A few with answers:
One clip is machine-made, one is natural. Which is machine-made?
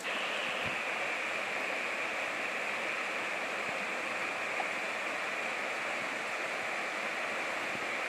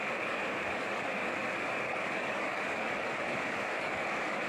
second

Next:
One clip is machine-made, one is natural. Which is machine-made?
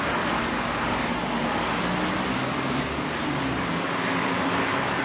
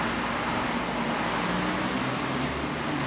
first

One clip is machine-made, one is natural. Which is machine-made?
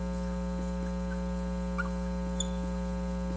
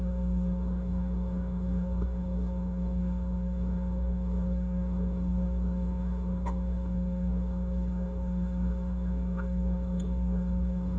second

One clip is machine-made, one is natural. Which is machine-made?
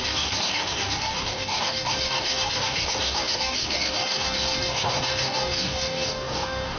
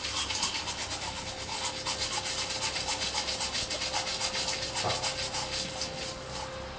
first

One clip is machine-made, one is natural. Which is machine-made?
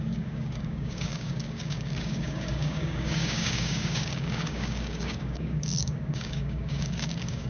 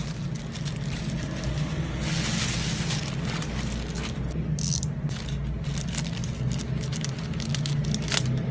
first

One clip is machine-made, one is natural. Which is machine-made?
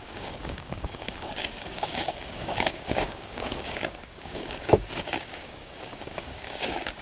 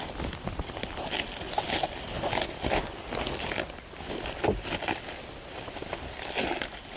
first